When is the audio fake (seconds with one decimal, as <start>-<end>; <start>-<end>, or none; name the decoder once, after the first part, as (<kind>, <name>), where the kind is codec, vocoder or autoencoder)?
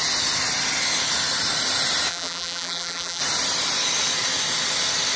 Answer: 2.1-3.2 (vocoder, BigVGAN v2)